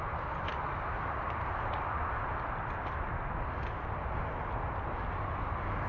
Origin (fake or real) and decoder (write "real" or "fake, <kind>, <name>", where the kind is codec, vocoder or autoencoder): real